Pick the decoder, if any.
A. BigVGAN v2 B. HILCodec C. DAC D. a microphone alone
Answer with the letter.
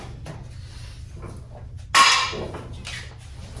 D